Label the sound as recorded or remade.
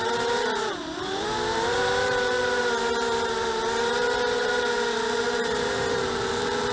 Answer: remade